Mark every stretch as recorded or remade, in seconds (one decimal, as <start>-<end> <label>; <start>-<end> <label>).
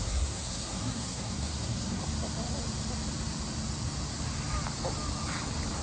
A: 0.0-2.0 remade; 2.0-5.8 recorded